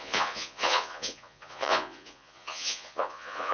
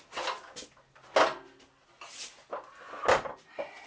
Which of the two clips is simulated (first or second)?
first